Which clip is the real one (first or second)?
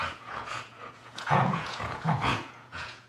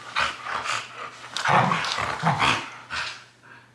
second